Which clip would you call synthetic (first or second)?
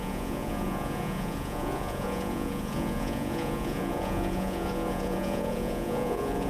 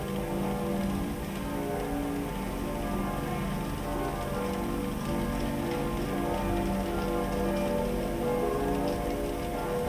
first